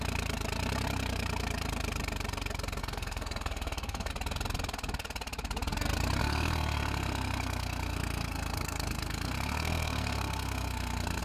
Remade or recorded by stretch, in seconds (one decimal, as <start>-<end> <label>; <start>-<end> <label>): 0.0-2.8 recorded; 2.8-4.1 remade; 4.1-6.2 recorded; 6.2-11.2 remade